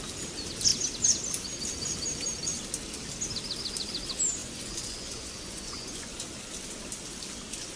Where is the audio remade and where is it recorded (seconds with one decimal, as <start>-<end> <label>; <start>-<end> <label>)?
0.0-4.4 recorded; 4.4-6.1 remade; 6.1-7.8 recorded